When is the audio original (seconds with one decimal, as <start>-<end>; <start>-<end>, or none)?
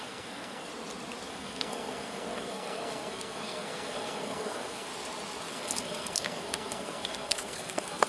0.7-1.3; 4.9-5.5